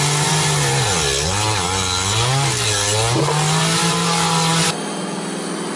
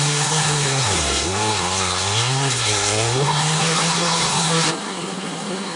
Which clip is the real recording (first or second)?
first